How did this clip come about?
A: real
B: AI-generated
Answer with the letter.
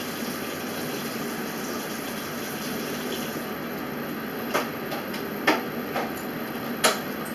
A